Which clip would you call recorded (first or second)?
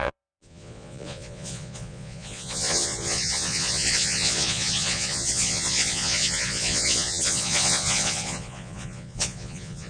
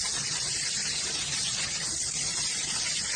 second